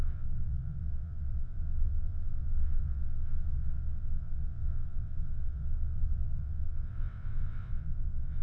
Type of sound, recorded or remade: remade